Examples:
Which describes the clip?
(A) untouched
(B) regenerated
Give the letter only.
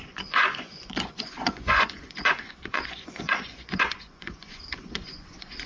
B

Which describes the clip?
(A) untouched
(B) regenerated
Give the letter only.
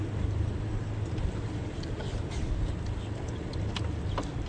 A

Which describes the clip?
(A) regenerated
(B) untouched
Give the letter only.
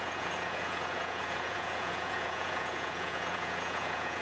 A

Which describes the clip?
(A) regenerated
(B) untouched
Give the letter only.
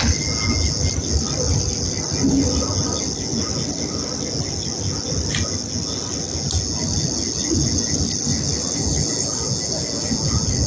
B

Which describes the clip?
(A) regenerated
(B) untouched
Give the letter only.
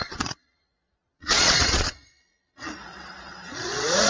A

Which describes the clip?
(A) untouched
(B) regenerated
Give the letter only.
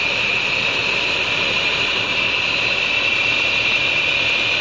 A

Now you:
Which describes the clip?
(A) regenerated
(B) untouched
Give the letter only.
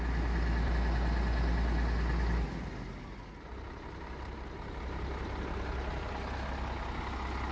B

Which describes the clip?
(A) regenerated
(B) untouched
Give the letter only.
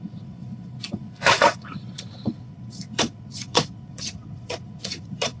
A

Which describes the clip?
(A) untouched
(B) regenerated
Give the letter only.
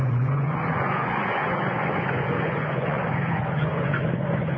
B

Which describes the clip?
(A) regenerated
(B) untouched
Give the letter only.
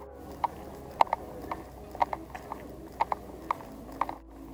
B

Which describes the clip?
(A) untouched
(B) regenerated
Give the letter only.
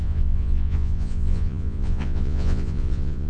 B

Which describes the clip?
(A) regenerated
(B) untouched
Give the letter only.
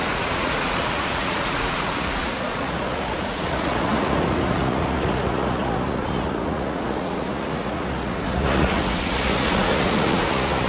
A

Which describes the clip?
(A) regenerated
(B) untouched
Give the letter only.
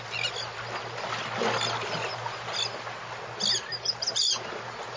B